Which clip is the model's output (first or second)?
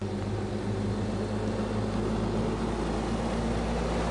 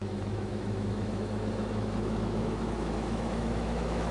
second